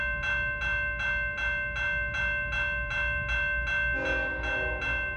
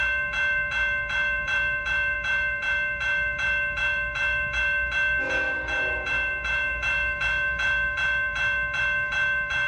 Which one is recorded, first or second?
first